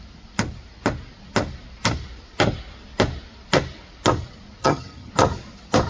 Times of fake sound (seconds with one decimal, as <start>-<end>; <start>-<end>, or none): 4.6-5.1